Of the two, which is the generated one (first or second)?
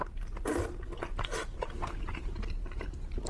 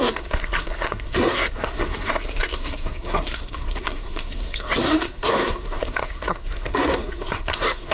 second